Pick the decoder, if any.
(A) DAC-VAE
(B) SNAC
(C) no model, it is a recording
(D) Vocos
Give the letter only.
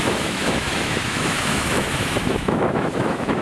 A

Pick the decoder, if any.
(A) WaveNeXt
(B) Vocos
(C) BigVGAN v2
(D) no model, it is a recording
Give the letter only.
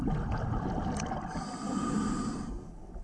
D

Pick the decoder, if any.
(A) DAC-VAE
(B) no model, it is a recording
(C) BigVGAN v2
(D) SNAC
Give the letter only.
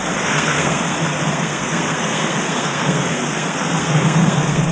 D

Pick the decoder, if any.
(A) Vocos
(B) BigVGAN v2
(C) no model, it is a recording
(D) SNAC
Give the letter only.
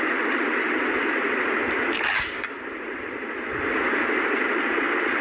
B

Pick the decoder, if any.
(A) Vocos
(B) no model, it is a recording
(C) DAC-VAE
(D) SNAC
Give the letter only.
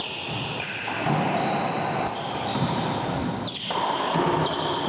B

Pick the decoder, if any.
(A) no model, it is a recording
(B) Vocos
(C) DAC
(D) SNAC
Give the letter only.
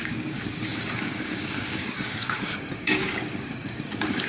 C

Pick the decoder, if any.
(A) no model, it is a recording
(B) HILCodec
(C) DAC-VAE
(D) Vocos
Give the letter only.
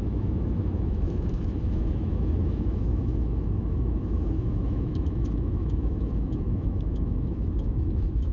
C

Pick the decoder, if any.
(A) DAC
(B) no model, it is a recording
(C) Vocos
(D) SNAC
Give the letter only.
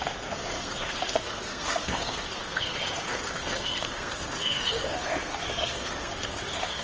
D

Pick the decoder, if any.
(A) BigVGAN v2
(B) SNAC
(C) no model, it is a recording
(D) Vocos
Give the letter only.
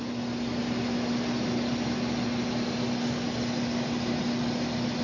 C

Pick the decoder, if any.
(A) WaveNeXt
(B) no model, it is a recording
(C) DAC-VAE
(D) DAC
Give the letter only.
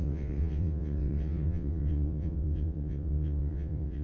A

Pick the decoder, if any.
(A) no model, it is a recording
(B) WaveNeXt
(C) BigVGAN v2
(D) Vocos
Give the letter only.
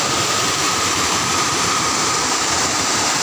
C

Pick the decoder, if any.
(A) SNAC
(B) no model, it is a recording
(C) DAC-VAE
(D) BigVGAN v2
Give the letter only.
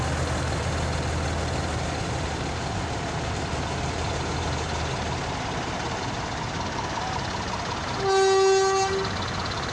B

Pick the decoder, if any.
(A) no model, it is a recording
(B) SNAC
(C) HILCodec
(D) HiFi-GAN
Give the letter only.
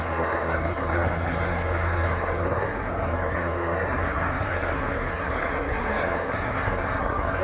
B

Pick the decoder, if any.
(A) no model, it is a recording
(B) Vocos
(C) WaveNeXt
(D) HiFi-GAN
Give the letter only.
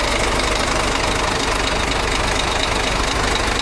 A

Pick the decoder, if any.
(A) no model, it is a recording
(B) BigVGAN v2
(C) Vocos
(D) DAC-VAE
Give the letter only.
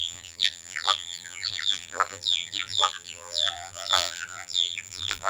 B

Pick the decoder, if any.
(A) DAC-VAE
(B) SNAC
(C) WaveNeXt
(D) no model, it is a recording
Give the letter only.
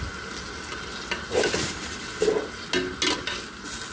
D